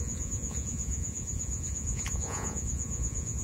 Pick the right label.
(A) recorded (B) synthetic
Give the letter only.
B